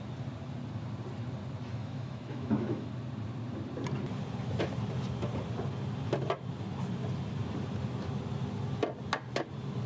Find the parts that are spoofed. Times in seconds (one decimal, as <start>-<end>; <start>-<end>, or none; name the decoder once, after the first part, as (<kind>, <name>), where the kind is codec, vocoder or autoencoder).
1.7-2.9 (autoencoder, DAC-VAE)